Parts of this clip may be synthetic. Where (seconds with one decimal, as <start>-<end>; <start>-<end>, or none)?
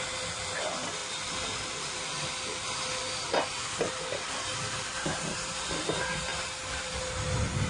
1.0-5.6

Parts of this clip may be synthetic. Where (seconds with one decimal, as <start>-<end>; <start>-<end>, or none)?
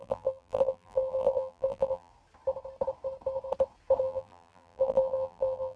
0.0-2.1; 4.0-5.8